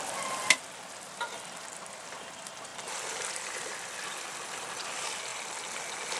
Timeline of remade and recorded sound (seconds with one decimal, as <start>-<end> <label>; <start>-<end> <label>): 0.0-5.3 remade; 5.3-6.2 recorded